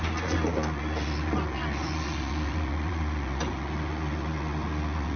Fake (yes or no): yes